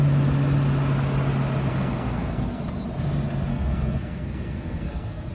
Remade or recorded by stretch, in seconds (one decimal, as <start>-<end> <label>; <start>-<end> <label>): 0.0-1.7 recorded; 1.7-2.6 remade; 2.6-3.5 recorded; 3.5-5.3 remade